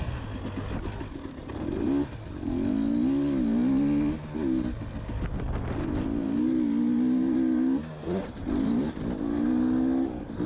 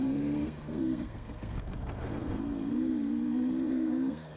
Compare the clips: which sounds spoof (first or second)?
second